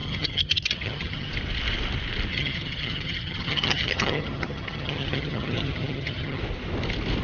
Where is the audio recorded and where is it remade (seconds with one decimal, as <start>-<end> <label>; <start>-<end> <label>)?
0.0-1.3 remade; 1.3-2.3 recorded; 2.3-6.4 remade; 6.4-7.2 recorded